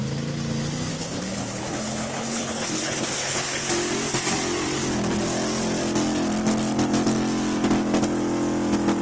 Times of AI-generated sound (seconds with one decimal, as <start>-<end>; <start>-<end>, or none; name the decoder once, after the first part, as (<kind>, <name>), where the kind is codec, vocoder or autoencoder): 0.9-3.6 (codec, HILCodec)